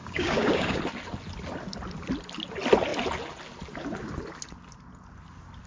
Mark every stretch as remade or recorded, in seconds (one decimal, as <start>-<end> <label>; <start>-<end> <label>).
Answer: 0.0-0.8 remade; 0.8-5.7 recorded